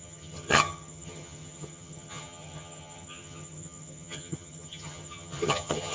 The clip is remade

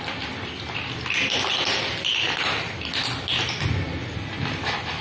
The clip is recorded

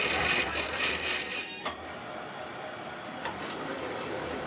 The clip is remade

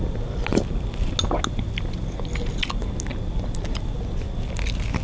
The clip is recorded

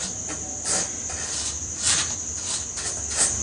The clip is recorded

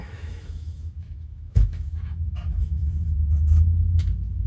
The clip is remade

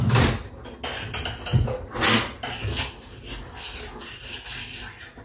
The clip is recorded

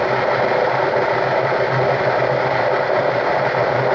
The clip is recorded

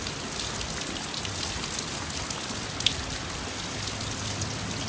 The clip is recorded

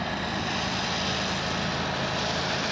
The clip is recorded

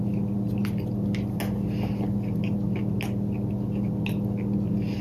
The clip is recorded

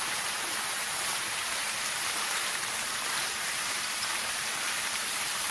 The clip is remade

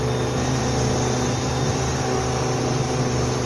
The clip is recorded